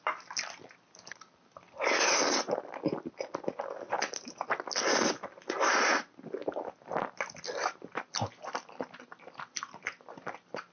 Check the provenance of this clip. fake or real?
real